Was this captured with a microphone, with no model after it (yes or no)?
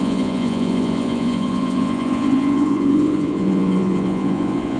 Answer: no